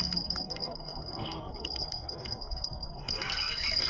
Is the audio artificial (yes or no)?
yes